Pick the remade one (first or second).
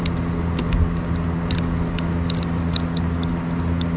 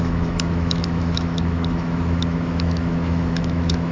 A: second